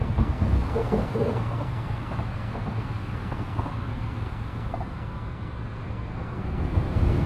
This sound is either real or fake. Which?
fake